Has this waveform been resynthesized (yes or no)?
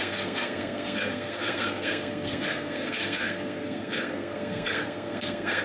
yes